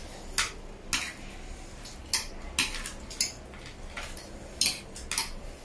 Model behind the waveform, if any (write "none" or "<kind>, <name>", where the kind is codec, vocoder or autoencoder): none